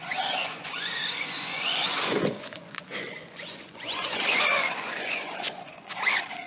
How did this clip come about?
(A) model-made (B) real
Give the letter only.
A